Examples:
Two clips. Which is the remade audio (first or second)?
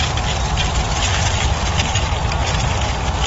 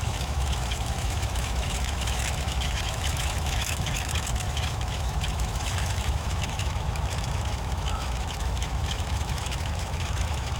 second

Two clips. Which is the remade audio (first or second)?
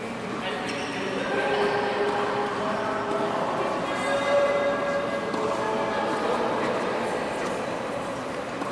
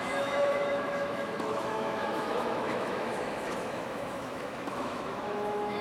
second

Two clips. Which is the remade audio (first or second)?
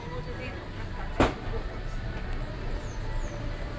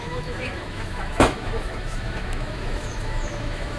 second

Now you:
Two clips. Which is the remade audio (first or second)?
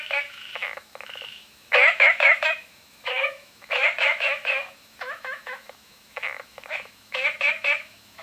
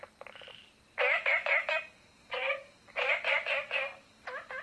first